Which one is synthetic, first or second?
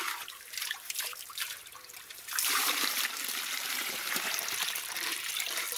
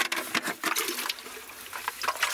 first